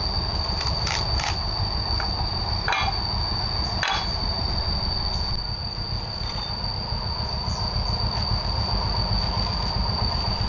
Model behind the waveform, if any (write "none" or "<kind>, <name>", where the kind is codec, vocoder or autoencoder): none